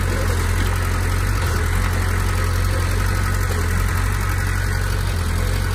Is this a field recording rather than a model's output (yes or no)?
yes